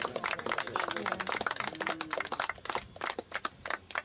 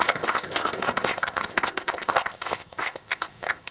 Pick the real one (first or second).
first